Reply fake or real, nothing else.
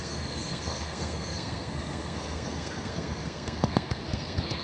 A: fake